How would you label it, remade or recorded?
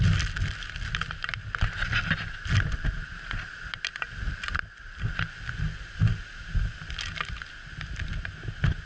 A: recorded